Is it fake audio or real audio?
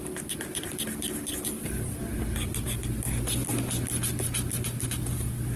real